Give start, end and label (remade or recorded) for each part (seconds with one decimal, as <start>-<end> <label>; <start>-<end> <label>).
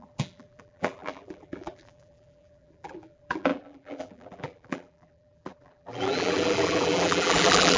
0.0-7.8 remade